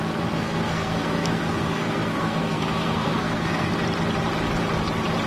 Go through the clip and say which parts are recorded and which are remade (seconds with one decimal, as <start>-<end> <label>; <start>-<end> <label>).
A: 0.0-3.7 remade; 3.7-5.3 recorded